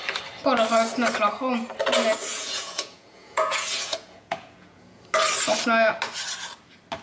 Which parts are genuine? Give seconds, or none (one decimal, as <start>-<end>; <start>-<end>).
0.0-2.3; 5.0-7.0